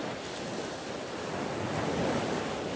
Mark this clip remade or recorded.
recorded